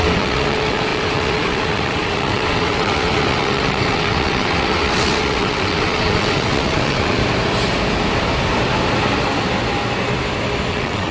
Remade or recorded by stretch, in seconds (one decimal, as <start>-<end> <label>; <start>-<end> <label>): 0.0-7.2 remade; 7.2-10.7 recorded; 10.7-11.1 remade